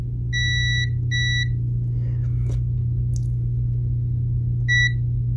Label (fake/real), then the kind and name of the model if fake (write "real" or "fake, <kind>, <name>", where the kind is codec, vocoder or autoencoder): real